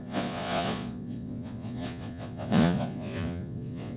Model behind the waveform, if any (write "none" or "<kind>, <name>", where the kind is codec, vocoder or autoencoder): vocoder, Vocos